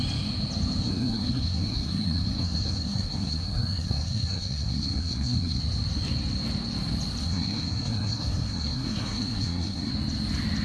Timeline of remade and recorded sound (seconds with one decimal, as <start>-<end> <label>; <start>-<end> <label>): 0.0-0.8 recorded; 0.8-5.6 remade; 5.6-7.2 recorded; 7.2-9.9 remade; 9.9-10.6 recorded